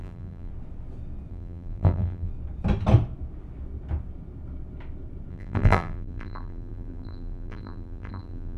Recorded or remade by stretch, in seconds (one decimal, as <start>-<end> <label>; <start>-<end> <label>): 0.0-0.5 remade; 0.5-1.3 recorded; 1.3-2.3 remade; 2.3-5.3 recorded; 5.3-8.6 remade